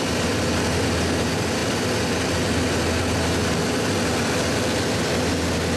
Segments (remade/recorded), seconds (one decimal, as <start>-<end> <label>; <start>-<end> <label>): 0.0-5.8 recorded